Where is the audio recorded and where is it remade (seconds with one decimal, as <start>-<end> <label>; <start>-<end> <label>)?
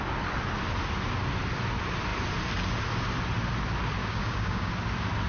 0.0-4.0 recorded; 4.0-4.7 remade; 4.7-5.3 recorded